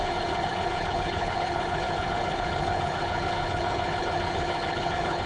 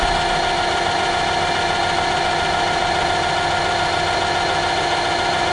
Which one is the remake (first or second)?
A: first